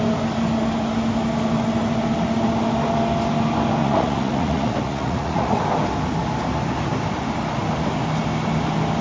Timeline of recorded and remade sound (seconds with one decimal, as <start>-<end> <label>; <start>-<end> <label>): 0.0-3.8 recorded; 3.8-5.6 remade; 5.6-9.0 recorded

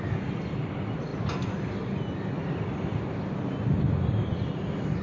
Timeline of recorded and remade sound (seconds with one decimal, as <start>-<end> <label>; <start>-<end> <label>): 0.0-5.0 recorded

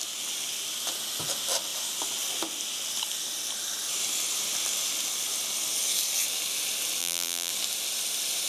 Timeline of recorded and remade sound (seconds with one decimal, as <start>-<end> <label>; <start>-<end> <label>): 0.0-7.0 recorded; 7.0-7.5 remade; 7.5-8.5 recorded